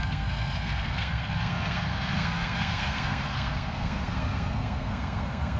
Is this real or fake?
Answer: fake